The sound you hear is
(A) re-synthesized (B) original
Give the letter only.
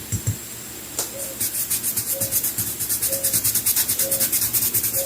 B